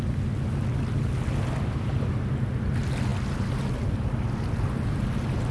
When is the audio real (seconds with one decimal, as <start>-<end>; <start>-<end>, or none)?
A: 0.0-5.5